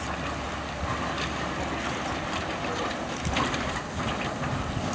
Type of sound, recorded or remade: recorded